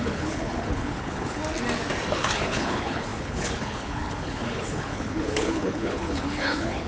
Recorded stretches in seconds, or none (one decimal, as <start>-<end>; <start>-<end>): 1.4-2.1

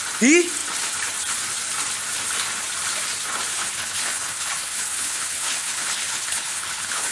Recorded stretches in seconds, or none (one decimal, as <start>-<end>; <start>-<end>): 0.0-3.5

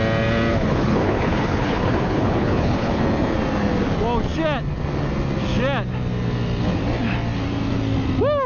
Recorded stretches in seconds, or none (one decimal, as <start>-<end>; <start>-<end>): 0.0-0.5; 3.0-8.5

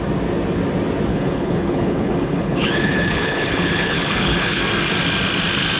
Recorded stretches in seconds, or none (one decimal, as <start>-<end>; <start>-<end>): 0.0-1.1; 4.6-5.8